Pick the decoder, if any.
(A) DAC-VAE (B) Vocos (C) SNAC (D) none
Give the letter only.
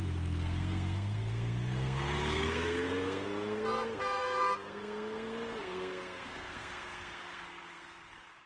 C